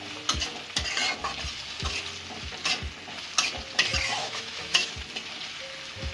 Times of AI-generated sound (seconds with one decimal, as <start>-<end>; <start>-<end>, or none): 4.2-4.9